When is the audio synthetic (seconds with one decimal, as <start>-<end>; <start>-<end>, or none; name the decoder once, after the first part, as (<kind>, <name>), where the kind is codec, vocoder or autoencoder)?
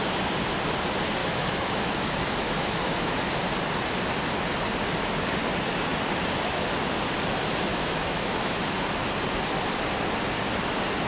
1.2-3.2 (autoencoder, DAC-VAE); 7.7-9.1